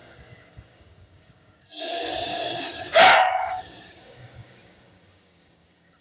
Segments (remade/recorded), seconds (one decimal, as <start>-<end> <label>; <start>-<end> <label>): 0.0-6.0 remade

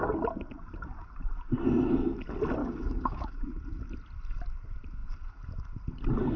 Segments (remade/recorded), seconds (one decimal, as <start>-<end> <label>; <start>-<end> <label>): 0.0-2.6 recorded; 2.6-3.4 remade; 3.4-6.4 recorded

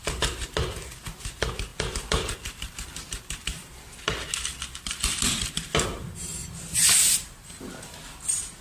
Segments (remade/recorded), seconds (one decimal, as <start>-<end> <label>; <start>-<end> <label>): 0.0-8.6 recorded

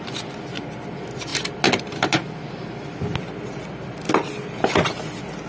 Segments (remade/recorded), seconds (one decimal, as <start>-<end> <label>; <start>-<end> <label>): 0.0-5.5 recorded